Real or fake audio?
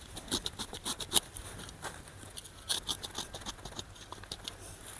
real